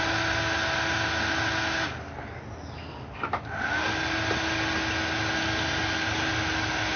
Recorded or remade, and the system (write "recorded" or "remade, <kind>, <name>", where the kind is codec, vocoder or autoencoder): recorded